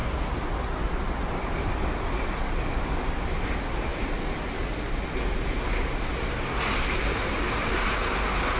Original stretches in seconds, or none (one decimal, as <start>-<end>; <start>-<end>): 0.0-8.6